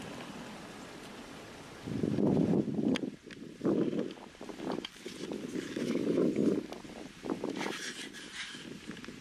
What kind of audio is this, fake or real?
real